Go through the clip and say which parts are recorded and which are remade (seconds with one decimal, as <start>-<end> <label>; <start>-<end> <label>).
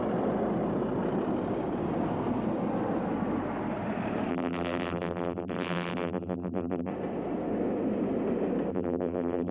0.0-4.3 recorded; 4.3-6.9 remade; 6.9-8.7 recorded; 8.7-9.5 remade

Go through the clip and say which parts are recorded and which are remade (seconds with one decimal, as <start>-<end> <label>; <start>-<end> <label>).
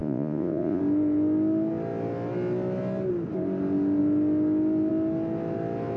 0.0-0.8 remade; 0.8-6.0 recorded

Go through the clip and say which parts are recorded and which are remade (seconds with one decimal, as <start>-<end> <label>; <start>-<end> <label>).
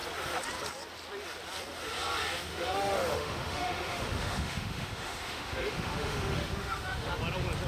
0.0-2.5 recorded; 2.5-7.1 remade; 7.1-7.7 recorded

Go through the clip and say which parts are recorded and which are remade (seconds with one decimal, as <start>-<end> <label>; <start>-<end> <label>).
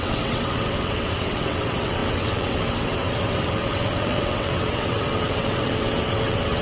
0.0-6.6 remade